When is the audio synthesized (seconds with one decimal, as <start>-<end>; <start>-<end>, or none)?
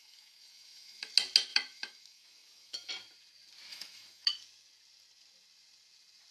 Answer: 0.0-1.1; 1.5-2.9; 3.7-4.3